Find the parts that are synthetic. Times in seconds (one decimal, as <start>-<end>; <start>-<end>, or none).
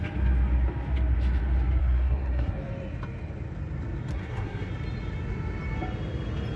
1.8-2.5; 4.1-4.7